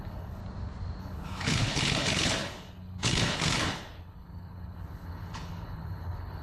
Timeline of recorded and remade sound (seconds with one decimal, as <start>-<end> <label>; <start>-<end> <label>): 0.0-0.4 remade; 0.4-1.0 recorded; 1.0-6.4 remade